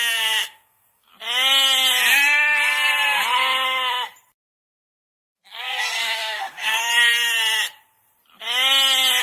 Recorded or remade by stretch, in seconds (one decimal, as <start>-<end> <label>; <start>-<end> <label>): 0.0-1.1 remade; 1.1-4.6 recorded; 4.6-6.8 remade; 6.8-9.2 recorded